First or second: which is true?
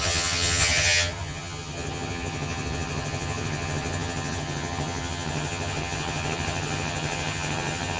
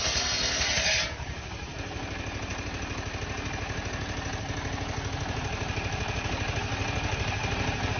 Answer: second